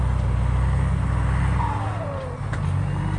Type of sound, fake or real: real